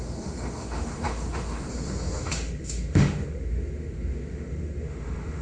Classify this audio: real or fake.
fake